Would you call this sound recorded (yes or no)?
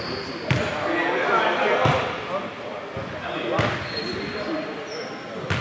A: yes